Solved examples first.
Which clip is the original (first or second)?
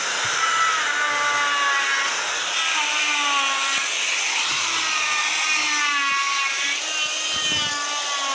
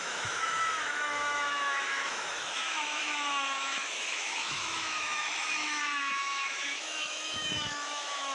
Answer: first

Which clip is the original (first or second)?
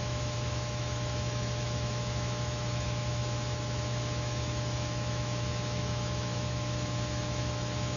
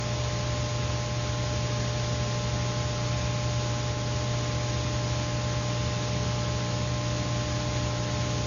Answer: second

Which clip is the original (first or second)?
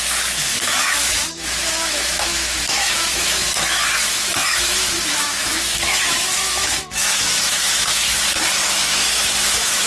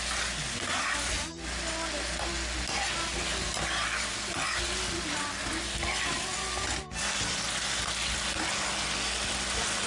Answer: second